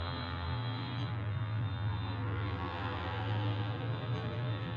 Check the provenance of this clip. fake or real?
fake